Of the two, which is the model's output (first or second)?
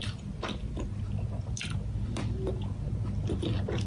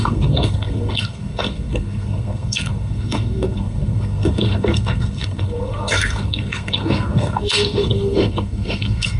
second